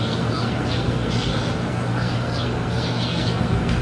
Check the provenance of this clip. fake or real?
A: fake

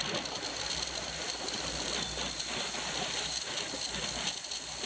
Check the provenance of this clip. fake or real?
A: real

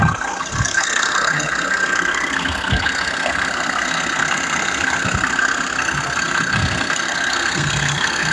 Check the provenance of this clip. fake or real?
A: fake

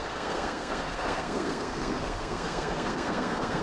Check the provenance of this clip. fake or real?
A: fake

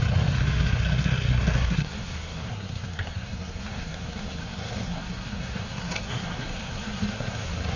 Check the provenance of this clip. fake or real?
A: fake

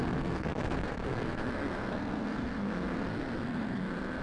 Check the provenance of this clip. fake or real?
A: fake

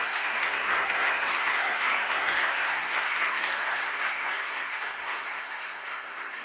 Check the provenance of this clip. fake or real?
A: fake